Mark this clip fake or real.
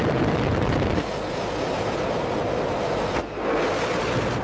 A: real